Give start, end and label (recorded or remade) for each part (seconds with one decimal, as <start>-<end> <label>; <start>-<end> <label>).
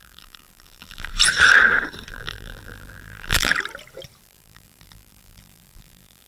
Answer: 0.0-1.1 remade; 1.1-2.1 recorded; 2.1-3.5 remade; 3.5-4.2 recorded; 4.2-6.3 remade